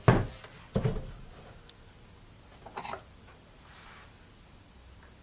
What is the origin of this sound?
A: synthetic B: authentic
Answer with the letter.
B